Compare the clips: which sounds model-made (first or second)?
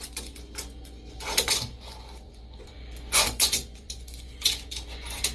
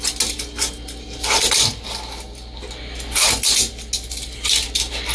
first